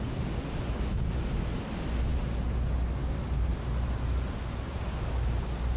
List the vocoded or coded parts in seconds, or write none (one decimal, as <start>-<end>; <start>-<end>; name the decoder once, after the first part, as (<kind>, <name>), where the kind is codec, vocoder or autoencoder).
none